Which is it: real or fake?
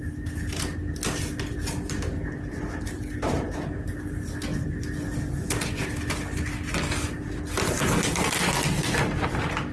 real